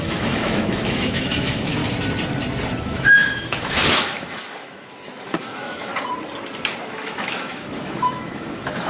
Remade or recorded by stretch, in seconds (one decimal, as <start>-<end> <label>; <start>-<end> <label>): 0.0-1.8 remade; 1.8-2.8 recorded; 2.8-5.9 remade; 5.9-6.8 recorded; 6.8-8.9 remade

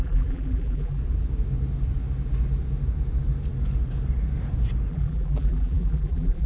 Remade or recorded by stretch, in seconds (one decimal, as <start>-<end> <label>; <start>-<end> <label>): 0.0-1.0 remade; 1.0-4.9 recorded; 4.9-6.5 remade